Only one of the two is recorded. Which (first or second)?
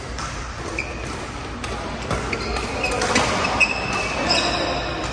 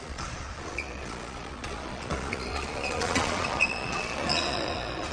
first